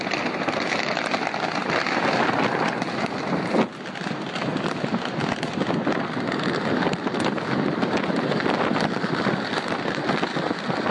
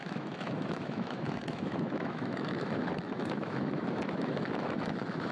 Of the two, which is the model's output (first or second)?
second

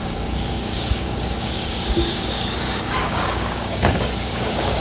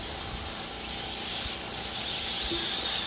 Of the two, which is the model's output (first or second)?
first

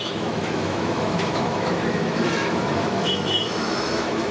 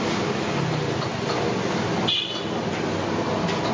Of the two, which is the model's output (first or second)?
first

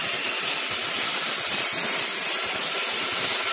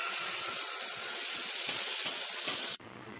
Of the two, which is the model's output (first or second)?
second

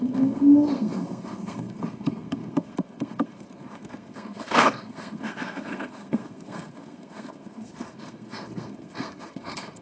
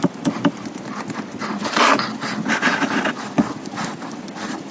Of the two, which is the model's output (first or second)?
first